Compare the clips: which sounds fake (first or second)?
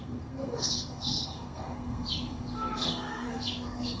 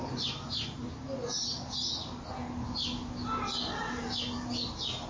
first